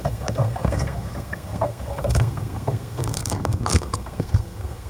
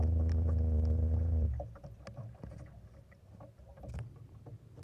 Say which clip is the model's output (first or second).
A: first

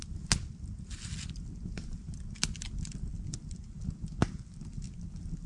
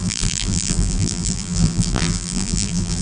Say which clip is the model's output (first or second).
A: second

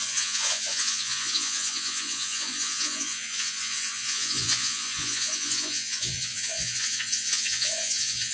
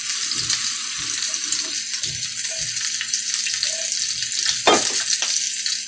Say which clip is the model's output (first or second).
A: first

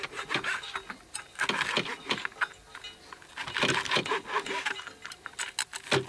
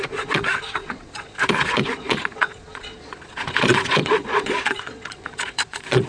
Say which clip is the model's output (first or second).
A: second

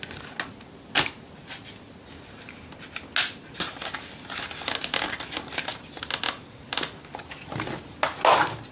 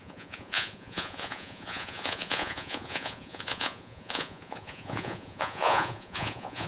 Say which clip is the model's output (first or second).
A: second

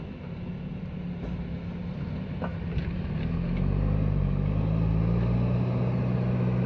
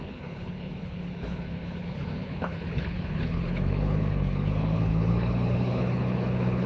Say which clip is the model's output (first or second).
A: second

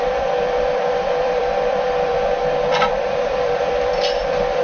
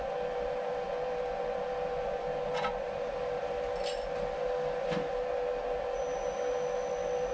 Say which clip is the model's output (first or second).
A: first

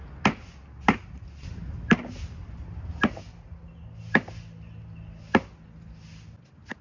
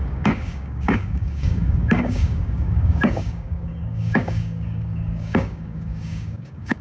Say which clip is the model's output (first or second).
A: second